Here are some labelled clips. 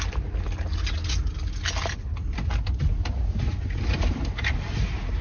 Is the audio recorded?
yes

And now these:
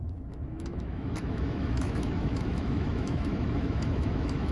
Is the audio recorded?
no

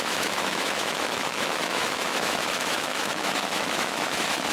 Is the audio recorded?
no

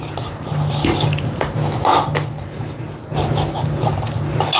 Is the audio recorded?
yes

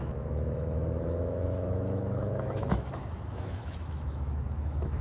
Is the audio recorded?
no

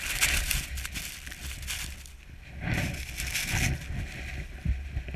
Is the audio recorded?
yes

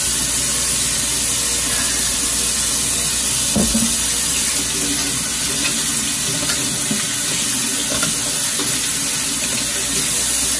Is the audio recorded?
yes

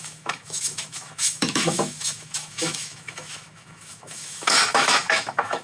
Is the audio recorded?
no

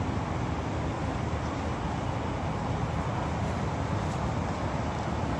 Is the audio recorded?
yes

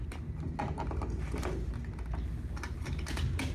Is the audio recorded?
yes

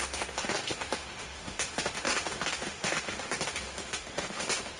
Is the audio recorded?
no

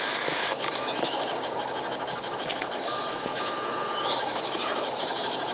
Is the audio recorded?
no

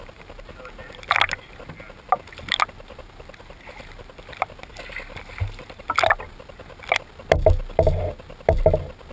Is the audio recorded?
yes